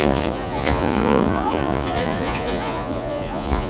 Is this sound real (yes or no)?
no